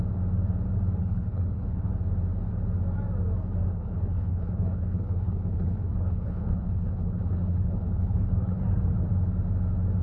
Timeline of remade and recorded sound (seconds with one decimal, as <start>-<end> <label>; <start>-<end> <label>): 0.0-1.0 recorded; 1.0-1.9 remade; 1.9-3.7 recorded; 3.7-8.6 remade; 8.6-10.0 recorded